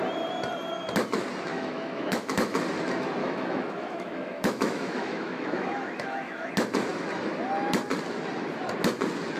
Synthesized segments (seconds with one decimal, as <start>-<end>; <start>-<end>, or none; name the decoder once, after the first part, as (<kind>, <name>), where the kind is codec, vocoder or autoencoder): 1.5-2.6 (autoencoder, DAC-VAE); 3.2-6.5